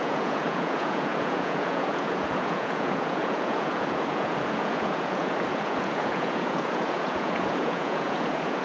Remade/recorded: remade